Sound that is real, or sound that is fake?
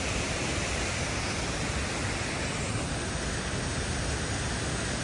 real